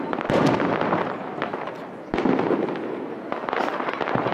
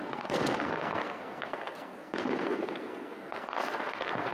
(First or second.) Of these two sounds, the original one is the first